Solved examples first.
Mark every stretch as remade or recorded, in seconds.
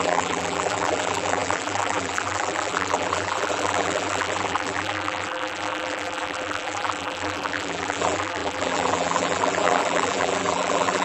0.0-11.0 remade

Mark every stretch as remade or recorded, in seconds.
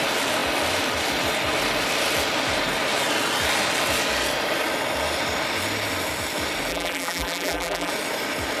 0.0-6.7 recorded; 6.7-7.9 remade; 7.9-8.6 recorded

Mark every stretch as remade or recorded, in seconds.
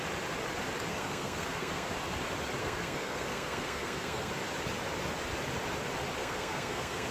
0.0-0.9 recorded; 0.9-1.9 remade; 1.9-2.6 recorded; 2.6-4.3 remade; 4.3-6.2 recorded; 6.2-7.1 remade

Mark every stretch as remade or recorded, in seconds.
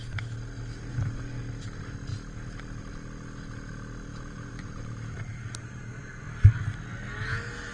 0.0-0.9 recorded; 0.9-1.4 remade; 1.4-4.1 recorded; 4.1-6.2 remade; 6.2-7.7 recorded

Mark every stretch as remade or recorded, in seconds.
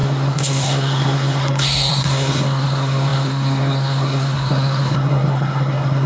0.0-6.1 remade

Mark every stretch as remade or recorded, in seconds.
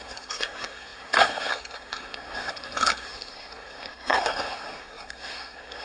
0.0-5.8 remade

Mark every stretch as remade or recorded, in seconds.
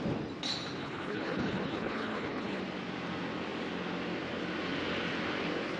0.0-0.8 recorded; 0.8-2.6 remade; 2.6-5.8 recorded